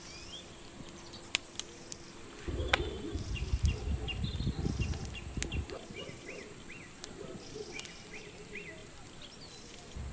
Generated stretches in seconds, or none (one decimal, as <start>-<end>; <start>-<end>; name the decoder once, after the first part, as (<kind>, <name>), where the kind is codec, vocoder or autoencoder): none